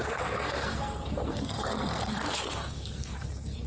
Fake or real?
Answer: fake